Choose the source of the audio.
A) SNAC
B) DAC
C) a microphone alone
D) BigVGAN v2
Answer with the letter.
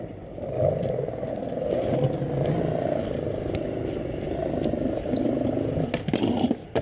D